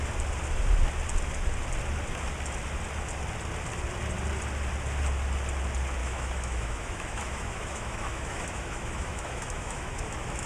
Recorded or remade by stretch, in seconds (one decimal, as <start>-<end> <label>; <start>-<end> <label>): 0.0-6.0 recorded; 6.0-10.5 remade